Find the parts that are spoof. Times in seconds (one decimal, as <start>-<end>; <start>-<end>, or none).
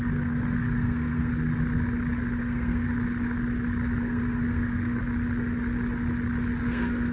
0.0-1.3; 2.4-2.9; 4.0-5.0; 6.6-7.1